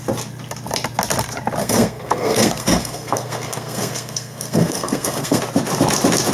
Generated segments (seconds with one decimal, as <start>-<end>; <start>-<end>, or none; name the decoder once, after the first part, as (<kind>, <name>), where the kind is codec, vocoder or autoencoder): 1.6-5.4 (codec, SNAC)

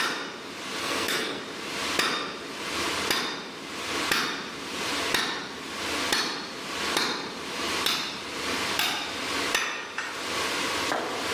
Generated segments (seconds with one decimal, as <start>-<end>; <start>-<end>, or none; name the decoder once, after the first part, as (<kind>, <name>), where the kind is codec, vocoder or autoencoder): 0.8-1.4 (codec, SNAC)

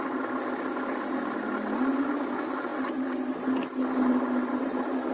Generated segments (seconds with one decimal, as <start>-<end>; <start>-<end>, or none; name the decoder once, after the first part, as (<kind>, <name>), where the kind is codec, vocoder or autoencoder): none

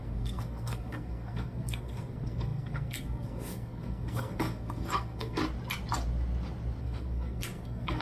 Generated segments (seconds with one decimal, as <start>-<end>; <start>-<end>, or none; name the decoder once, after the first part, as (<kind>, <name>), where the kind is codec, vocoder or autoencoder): 0.0-5.4 (codec, SNAC); 6.8-8.0

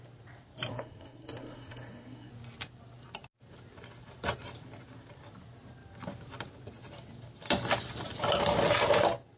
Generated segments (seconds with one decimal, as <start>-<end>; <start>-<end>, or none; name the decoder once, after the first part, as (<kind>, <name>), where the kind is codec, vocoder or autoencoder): 0.7-2.3 (codec, SNAC)

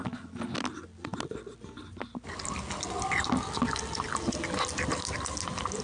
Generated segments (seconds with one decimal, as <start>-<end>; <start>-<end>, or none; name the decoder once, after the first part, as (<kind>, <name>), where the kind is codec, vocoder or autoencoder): none

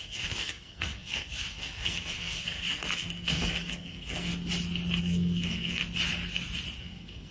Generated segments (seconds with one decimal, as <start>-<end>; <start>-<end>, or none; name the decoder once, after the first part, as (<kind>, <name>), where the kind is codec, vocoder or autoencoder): 0.0-4.3 (codec, SNAC); 5.0-5.8; 6.8-7.3